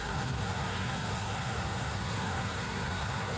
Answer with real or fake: fake